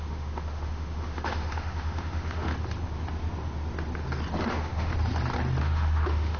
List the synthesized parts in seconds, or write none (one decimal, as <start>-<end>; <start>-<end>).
0.0-2.5; 4.5-4.9; 5.6-6.4